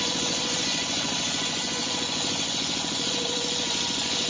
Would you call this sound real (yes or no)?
no